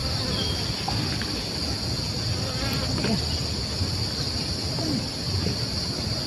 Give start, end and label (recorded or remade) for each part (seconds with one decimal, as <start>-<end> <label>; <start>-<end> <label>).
0.0-6.3 recorded